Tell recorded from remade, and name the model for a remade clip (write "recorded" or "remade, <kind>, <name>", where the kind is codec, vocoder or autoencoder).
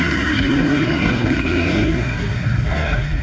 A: remade, codec, SNAC